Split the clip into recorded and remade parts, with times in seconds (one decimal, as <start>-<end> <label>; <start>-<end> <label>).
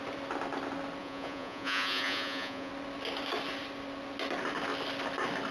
0.0-1.0 recorded; 1.0-2.7 remade; 2.7-5.5 recorded